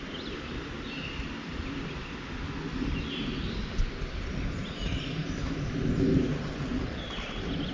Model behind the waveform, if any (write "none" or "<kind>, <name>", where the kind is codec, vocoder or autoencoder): none